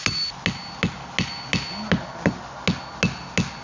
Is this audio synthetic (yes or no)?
no